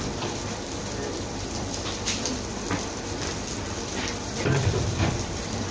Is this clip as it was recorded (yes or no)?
no